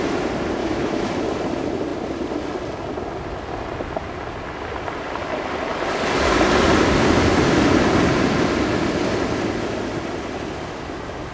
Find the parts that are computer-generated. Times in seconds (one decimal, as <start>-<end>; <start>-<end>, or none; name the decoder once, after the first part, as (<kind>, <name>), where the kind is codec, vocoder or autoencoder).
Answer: 0.6-1.1 (autoencoder, DAC-VAE)